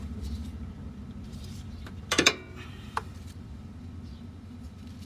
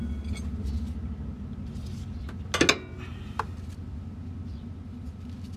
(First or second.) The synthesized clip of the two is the first